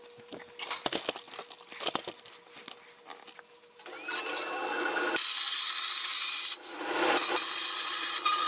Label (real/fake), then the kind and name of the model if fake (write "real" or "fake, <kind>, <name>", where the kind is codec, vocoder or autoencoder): real